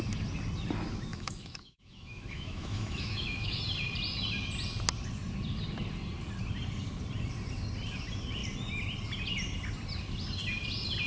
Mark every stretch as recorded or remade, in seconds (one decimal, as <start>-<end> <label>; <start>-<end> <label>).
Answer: 0.0-1.1 recorded; 1.1-3.6 remade; 3.6-11.1 recorded